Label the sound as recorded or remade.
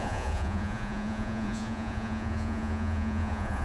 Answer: remade